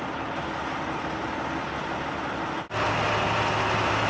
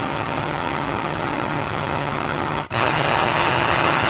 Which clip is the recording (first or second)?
first